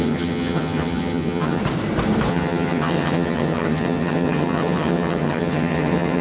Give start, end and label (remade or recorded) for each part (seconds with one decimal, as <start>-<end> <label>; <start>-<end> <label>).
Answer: 0.0-1.6 remade; 1.6-2.3 recorded; 2.3-6.2 remade